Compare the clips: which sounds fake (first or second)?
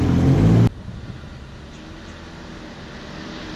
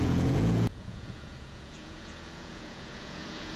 second